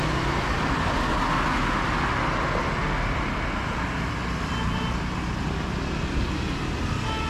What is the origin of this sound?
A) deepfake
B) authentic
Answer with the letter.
B